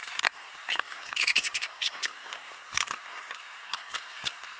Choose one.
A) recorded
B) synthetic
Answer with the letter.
B